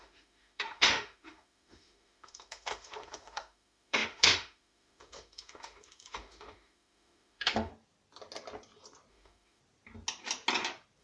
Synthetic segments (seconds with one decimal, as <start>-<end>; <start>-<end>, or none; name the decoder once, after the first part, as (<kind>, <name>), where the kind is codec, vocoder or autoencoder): 0.0-7.7 (autoencoder, DAC-VAE); 9.1-9.6